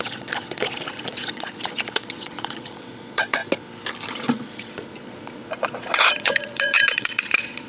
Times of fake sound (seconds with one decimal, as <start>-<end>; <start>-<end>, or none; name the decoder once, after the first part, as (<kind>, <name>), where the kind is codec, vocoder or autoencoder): 0.0-3.4 (vocoder, Vocos); 4.1-7.7